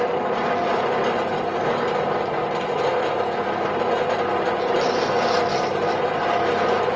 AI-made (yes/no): no